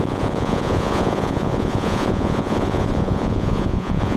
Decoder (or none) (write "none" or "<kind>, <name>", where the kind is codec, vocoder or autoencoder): vocoder, Vocos